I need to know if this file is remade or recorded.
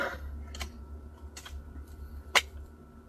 recorded